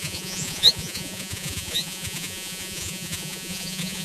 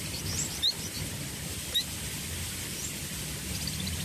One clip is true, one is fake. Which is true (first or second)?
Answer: second